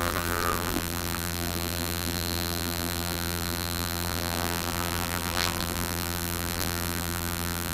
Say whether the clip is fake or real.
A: fake